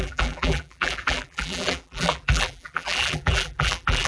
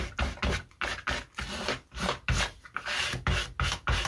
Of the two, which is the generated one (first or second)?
first